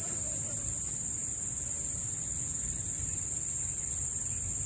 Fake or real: real